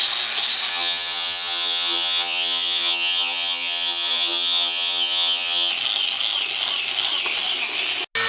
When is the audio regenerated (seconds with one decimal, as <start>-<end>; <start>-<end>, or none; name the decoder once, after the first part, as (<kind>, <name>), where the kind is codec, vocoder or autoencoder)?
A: 0.7-5.7 (vocoder, HiFi-GAN)